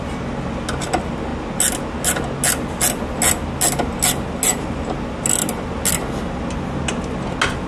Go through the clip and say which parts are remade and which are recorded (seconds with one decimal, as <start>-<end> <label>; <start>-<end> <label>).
0.0-7.7 recorded